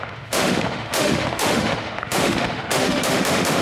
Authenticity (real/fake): fake